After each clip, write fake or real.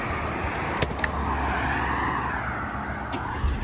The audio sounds real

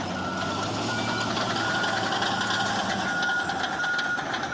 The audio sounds real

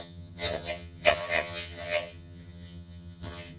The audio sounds fake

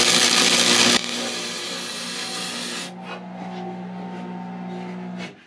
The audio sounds real